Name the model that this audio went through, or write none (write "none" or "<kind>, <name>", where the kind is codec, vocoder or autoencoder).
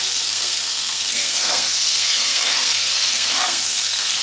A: codec, SNAC